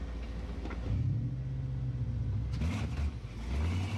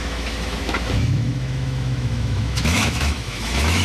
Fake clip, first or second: second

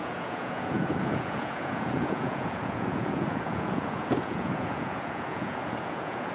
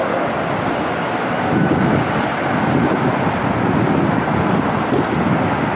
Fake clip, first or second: first